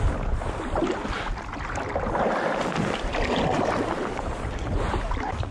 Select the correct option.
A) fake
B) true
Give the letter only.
B